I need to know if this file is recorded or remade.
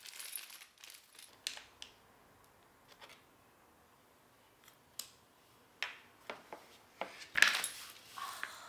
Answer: recorded